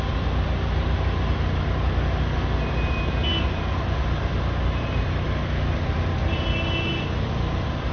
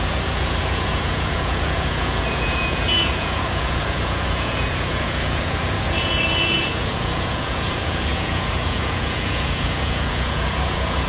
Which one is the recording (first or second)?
first